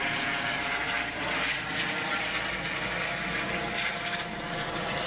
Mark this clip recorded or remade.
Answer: recorded